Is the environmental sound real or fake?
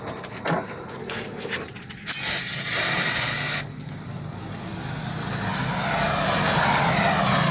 real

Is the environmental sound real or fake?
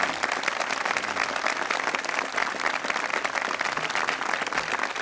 real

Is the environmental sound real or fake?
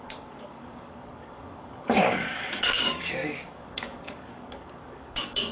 fake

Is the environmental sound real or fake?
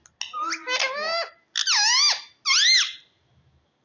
real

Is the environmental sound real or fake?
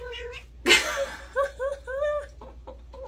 real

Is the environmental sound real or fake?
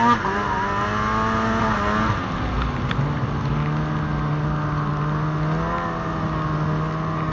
real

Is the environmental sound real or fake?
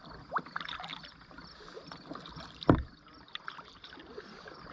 real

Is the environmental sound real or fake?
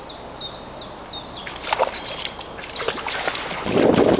real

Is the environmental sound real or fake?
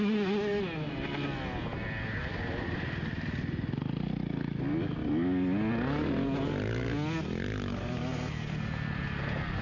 real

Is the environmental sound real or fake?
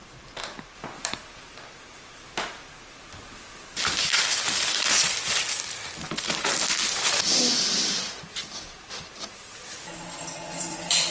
real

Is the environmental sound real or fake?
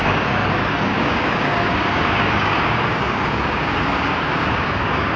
fake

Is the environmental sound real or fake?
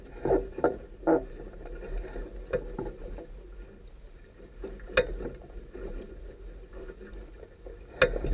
real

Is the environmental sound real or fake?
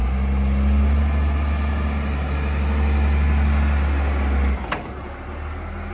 real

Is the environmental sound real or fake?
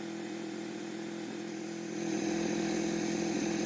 real